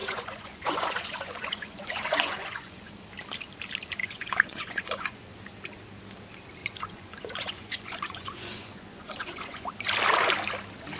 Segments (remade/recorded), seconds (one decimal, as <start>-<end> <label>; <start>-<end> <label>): 0.0-2.9 remade; 2.9-4.0 recorded; 4.0-5.3 remade; 5.3-6.6 recorded; 6.6-9.7 remade; 9.7-11.0 recorded